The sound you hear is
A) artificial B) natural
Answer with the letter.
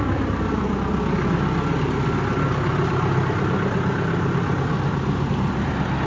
B